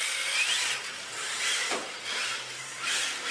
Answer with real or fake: real